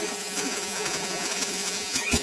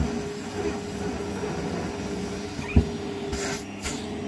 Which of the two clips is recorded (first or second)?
second